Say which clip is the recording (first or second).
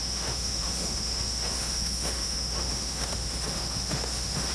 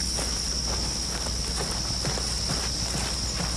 second